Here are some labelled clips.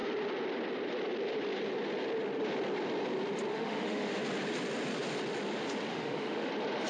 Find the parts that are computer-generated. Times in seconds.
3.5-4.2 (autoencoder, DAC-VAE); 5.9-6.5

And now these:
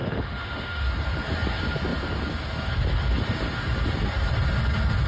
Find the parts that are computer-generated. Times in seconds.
0.0-0.8 (autoencoder, DAC-VAE)

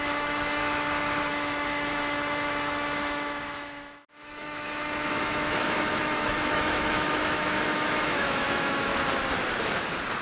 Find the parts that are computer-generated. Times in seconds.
0.0-0.6 (autoencoder, DAC-VAE); 1.3-8.9

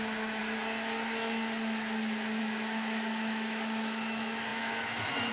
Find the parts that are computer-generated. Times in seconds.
0.0-0.4 (autoencoder, DAC-VAE); 2.4-5.3

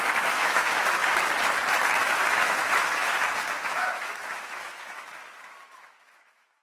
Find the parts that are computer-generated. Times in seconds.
0.0-1.0 (autoencoder, DAC-VAE); 2.0-6.6